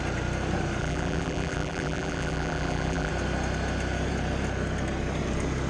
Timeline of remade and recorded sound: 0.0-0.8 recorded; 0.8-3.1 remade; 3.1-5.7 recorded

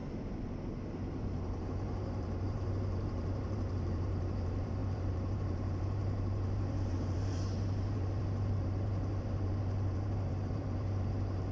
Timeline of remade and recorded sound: 0.0-1.2 recorded; 1.2-11.5 remade

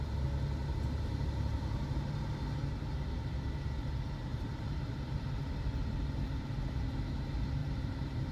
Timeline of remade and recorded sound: 0.0-0.6 recorded; 0.6-2.3 remade; 2.3-4.3 recorded; 4.3-6.6 remade; 6.6-7.6 recorded; 7.6-8.3 remade

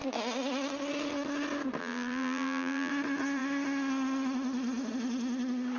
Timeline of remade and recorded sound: 0.0-1.8 recorded; 1.8-2.9 remade; 2.9-5.8 recorded